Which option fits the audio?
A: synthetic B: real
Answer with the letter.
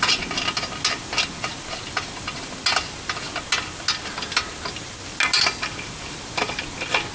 B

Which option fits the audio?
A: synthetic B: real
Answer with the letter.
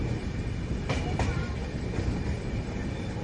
B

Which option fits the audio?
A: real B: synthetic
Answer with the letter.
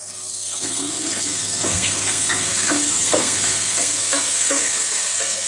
B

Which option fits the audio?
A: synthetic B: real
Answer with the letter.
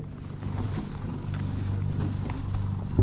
B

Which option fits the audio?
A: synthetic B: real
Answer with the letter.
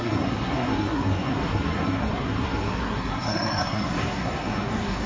A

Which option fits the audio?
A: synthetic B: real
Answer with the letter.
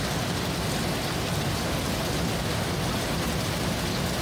B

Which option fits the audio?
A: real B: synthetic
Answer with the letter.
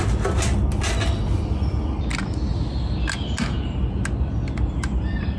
A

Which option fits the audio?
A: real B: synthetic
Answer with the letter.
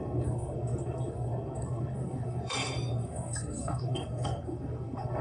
B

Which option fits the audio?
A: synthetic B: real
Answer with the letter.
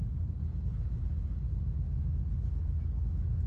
B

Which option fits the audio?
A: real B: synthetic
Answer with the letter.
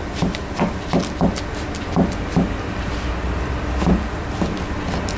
A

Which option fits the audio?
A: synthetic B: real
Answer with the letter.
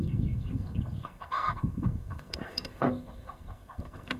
A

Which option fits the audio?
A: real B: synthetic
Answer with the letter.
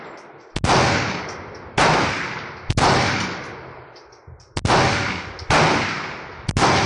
A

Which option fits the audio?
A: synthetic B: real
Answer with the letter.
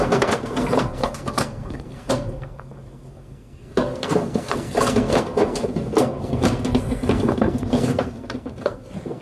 A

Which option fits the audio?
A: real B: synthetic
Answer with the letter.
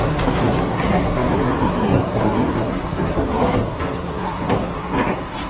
B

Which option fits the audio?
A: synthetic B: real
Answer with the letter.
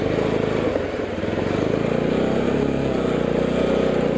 B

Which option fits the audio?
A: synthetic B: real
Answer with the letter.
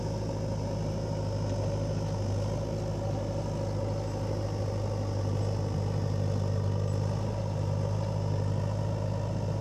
B